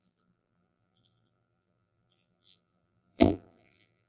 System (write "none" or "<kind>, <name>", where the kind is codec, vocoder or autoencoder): vocoder, BigVGAN v2